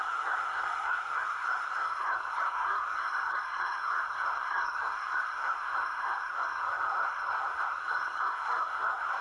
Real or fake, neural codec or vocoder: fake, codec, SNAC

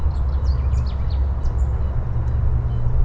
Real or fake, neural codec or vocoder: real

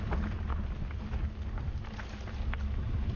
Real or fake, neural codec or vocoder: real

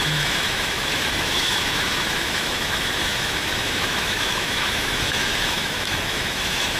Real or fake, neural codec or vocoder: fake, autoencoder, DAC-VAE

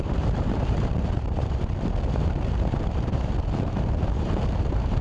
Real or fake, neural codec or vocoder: fake, vocoder, BigVGAN v2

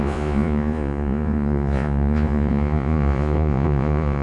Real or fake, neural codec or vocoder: fake, vocoder, Vocos